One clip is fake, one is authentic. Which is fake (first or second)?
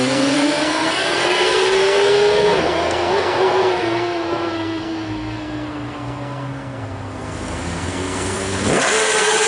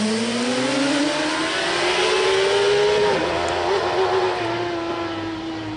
first